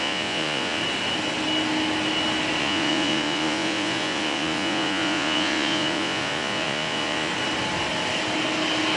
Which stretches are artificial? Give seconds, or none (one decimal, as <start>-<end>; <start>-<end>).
0.0-0.8; 2.6-7.3

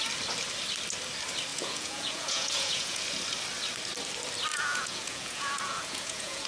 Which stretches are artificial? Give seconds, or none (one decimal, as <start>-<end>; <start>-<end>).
1.5-3.0; 4.5-6.5

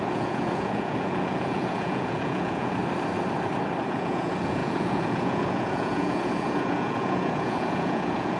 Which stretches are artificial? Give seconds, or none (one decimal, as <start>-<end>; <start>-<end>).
0.0-2.8; 3.9-8.4

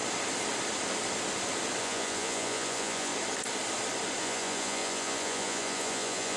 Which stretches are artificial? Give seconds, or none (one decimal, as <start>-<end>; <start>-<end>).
1.8-3.1; 4.2-6.4